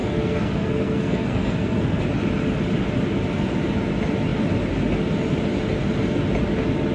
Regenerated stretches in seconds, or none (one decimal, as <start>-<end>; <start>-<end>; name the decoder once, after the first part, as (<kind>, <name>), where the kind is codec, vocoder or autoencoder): 0.0-2.0 (codec, SNAC)